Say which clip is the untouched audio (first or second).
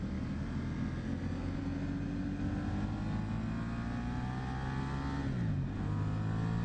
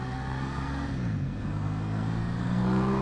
first